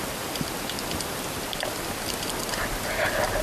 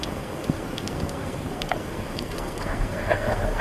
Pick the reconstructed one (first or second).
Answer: second